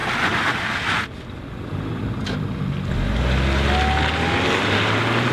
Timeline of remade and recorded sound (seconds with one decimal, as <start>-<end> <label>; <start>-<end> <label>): 0.0-5.3 recorded